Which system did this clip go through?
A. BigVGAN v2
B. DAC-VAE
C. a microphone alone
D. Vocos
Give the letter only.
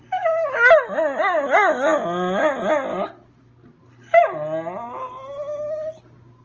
C